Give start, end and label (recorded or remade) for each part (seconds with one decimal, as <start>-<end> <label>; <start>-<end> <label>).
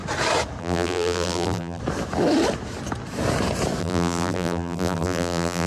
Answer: 0.0-0.6 recorded; 0.6-1.8 remade; 1.8-3.8 recorded; 3.8-5.7 remade